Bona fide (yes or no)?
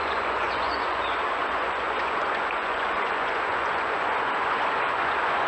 no